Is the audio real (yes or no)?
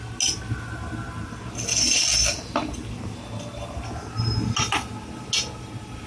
yes